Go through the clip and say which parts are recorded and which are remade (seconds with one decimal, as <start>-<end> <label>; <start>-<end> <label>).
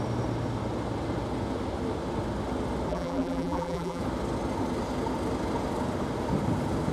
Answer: 0.0-2.9 recorded; 2.9-4.0 remade; 4.0-6.9 recorded